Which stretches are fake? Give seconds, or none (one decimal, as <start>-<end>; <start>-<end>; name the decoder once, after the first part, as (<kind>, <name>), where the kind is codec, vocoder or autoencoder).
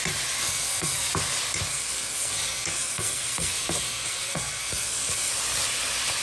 0.4-1.1 (codec, SNAC); 1.7-5.3